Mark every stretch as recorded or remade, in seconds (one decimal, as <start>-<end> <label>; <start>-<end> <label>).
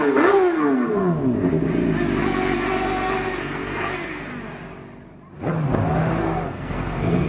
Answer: 0.0-1.0 remade; 1.0-2.2 recorded; 2.2-4.3 remade; 4.3-6.2 recorded; 6.2-7.3 remade